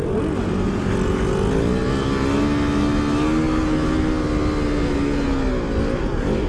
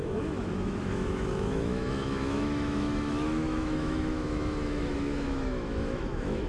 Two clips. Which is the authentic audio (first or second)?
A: first